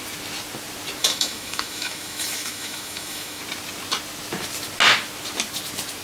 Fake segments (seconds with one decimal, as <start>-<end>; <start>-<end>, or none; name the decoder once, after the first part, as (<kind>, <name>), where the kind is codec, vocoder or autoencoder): 1.0-3.4 (autoencoder, DAC-VAE)

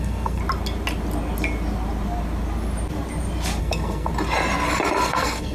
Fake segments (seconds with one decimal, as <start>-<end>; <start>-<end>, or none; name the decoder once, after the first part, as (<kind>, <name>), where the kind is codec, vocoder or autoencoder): 0.0-0.4 (codec, SNAC); 3.6-4.1; 5.0-5.5

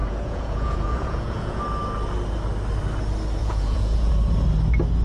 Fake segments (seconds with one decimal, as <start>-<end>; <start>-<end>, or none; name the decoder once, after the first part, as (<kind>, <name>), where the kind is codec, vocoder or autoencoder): 0.0-1.6 (vocoder, Vocos); 3.4-4.1

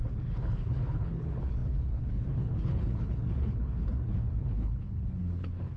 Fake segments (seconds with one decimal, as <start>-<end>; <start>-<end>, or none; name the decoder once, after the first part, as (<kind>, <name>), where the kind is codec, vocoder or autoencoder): 0.0-5.8 (codec, HILCodec)

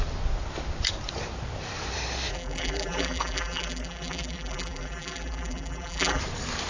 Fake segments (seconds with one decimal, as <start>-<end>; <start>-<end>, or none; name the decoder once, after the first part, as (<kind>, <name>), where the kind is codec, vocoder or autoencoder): 2.3-6.2 (vocoder, BigVGAN v2)

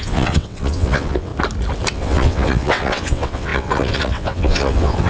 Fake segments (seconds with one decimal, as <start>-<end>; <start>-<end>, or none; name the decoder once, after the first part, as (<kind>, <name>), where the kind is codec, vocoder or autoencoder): 0.0-1.3 (vocoder, WaveNeXt); 1.9-5.1

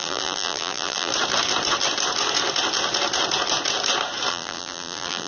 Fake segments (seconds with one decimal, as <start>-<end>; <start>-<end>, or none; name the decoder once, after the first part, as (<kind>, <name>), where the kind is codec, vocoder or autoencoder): 0.0-1.1 (vocoder, BigVGAN v2); 4.3-5.3